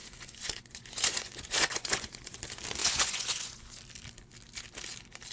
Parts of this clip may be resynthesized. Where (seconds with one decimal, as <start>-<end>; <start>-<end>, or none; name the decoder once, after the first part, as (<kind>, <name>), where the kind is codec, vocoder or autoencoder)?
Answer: 0.0-2.4 (vocoder, Vocos); 2.8-3.8